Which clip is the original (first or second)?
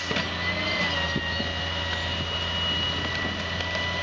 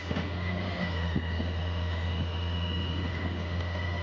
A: first